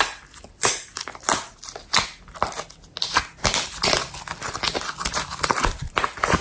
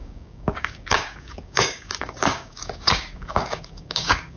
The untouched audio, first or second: first